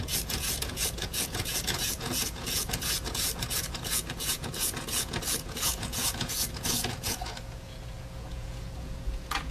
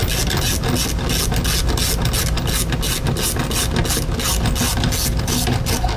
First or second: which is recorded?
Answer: second